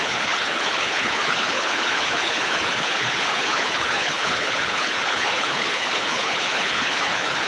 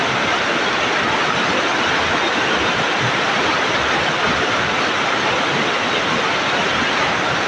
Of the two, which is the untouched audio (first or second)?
second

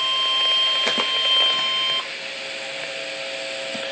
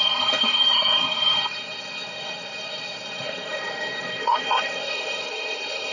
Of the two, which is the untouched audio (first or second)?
first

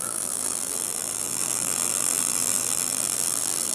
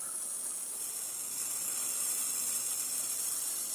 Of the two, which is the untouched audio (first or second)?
second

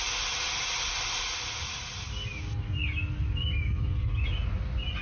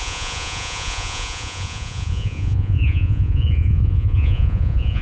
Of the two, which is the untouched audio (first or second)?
first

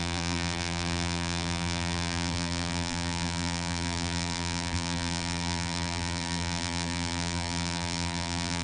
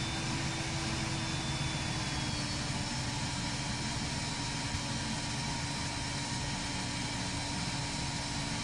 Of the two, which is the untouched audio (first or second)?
second